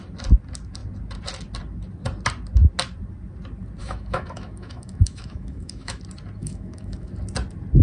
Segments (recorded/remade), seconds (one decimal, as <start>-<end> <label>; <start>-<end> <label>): 0.0-3.8 recorded; 3.8-6.0 remade; 6.0-6.4 recorded; 6.4-7.1 remade; 7.1-7.8 recorded